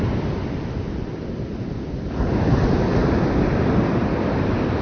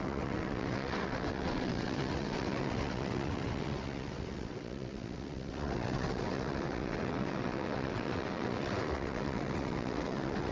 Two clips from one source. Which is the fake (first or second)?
second